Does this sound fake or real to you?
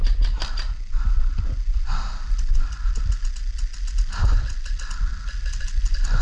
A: real